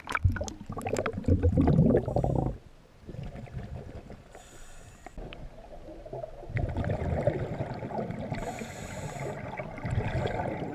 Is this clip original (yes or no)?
yes